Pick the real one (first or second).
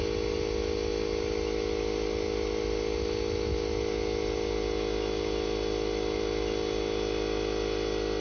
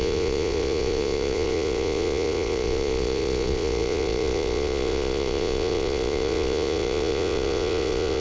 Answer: first